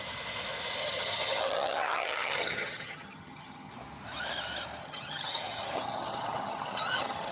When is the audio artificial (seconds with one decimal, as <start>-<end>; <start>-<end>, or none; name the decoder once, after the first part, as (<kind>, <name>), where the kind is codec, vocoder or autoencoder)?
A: 0.8-3.7 (vocoder, HiFi-GAN); 4.8-7.3